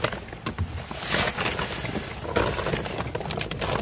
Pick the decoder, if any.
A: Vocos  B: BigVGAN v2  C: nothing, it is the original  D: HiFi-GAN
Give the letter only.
C